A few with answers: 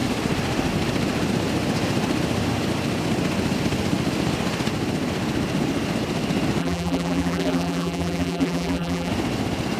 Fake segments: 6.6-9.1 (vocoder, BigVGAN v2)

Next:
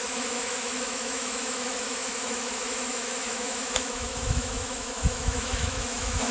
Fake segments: 0.0-6.3 (autoencoder, DAC-VAE)

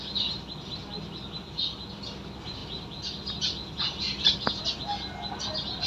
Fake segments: none

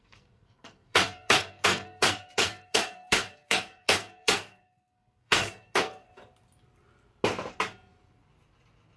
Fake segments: 0.0-6.1 (codec, SNAC)

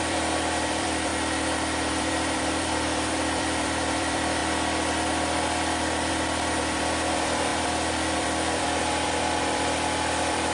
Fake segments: 0.0-1.1 (vocoder, BigVGAN v2); 1.9-4.4; 6.1-10.5

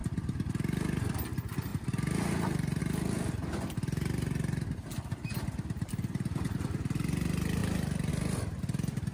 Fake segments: 7.6-8.1 (vocoder, BigVGAN v2)

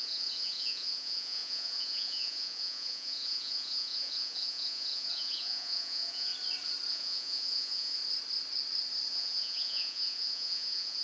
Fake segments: 0.0-6.3 (vocoder, Vocos); 6.9-8.0; 9.1-11.0

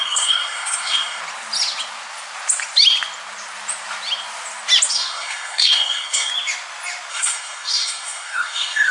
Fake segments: 0.0-1.2 (codec, SNAC); 4.9-6.3; 7.1-8.9